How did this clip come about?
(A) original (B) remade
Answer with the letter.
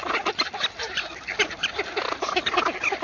A